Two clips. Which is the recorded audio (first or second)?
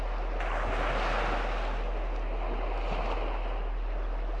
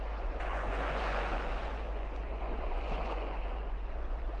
first